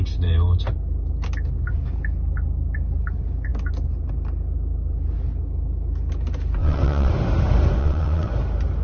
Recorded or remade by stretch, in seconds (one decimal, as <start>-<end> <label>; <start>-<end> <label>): 0.0-6.6 recorded; 6.6-7.1 remade; 7.1-7.8 recorded; 7.8-8.3 remade; 8.3-8.8 recorded